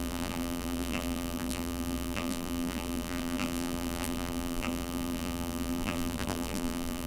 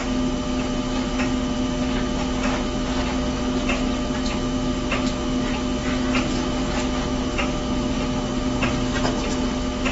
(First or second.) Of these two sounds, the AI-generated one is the first